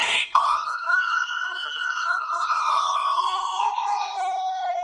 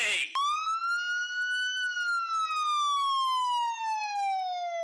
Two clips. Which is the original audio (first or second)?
second